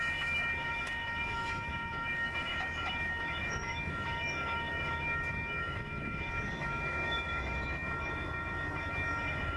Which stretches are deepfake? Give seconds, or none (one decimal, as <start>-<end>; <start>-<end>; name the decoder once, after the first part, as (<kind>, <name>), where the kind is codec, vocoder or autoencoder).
0.0-9.6 (autoencoder, DAC-VAE)